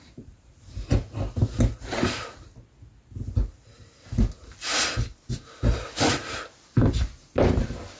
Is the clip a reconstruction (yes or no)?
no